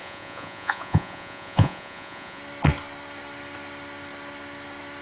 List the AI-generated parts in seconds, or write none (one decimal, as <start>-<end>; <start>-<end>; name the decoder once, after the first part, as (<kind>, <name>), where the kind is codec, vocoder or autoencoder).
0.0-2.4 (vocoder, Vocos)